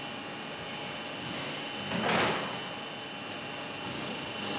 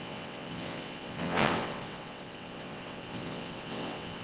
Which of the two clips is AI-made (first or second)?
second